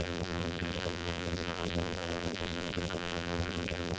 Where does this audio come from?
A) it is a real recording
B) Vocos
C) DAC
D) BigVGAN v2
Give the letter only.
D